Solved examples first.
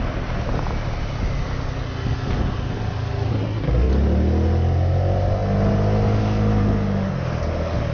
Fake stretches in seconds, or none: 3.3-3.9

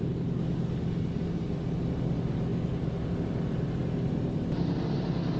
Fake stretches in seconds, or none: none

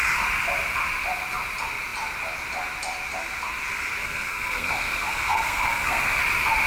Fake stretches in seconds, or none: 4.0-6.2

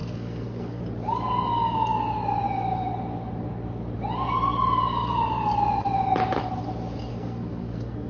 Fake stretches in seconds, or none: 0.0-0.8; 7.1-8.1

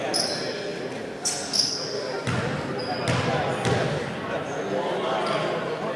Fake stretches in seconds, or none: none

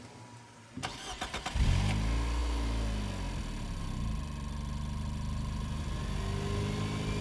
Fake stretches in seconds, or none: none

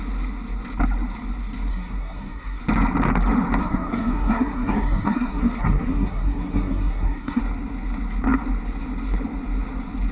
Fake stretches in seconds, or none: 1.7-2.6; 3.6-7.4

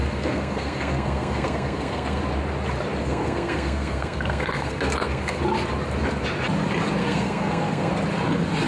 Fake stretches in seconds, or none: 0.0-2.2; 3.0-5.4; 7.0-7.9